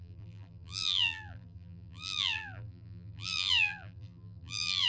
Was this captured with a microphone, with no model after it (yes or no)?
no